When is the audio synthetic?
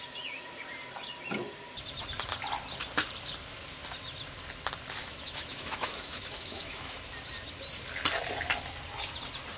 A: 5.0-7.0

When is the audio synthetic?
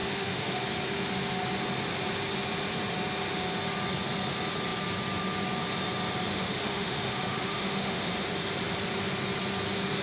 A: 0.0-0.6; 6.3-8.1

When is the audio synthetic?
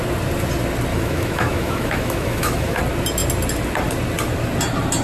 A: 0.9-2.8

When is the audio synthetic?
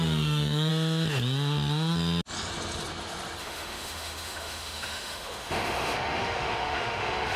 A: 0.0-0.7; 3.4-7.4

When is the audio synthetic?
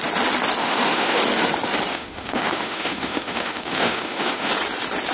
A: 0.6-1.2; 1.9-4.5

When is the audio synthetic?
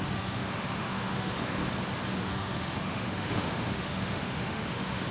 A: 0.0-1.6; 2.2-5.1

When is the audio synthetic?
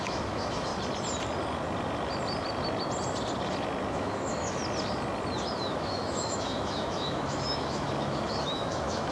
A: 0.0-0.7; 3.9-4.6; 5.6-9.1